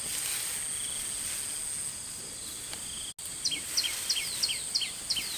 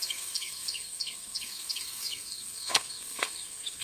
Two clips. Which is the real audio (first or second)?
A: first